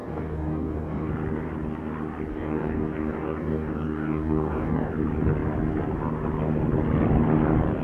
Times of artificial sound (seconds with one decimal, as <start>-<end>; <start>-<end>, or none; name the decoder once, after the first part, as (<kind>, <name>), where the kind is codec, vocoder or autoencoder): 0.0-1.1 (codec, DAC); 2.3-4.9